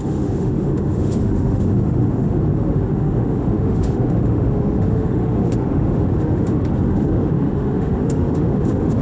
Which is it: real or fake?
fake